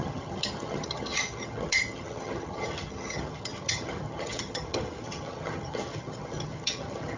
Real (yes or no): no